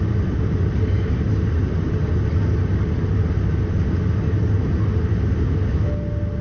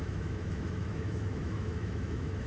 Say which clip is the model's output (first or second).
second